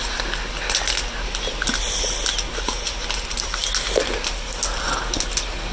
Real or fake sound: real